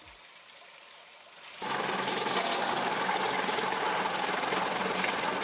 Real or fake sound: real